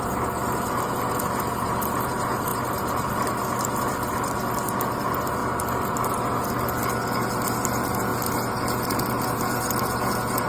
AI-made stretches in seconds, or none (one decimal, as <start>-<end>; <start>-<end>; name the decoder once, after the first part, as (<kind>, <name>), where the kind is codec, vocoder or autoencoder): none